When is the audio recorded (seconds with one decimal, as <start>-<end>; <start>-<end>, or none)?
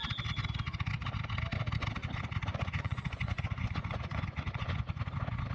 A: 0.0-2.5; 4.9-5.5